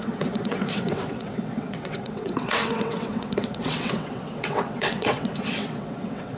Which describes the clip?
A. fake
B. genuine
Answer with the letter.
A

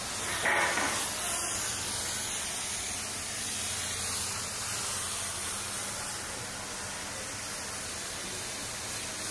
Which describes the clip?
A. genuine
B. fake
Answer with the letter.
A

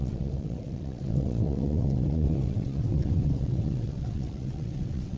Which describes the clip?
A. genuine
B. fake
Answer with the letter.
B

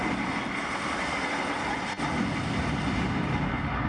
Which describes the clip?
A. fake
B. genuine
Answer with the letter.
B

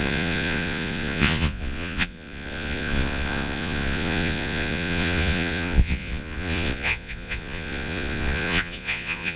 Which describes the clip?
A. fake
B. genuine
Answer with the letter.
A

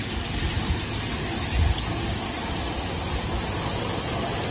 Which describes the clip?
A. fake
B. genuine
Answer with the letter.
B